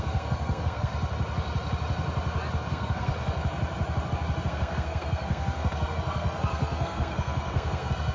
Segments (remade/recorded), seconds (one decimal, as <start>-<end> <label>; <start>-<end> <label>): 0.0-0.9 remade; 0.9-2.7 recorded; 2.7-3.1 remade; 3.1-4.5 recorded; 4.5-8.1 remade